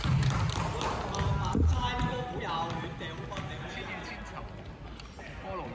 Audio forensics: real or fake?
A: real